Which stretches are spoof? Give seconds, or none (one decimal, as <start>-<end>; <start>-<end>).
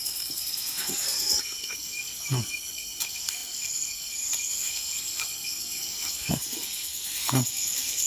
0.0-8.1